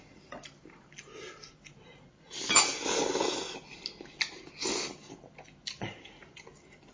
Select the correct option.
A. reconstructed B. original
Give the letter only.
B